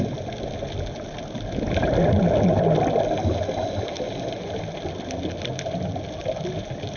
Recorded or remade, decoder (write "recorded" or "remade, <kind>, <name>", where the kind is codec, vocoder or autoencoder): recorded